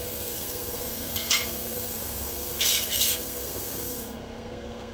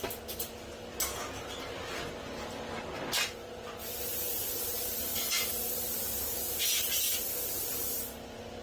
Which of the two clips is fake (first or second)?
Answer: first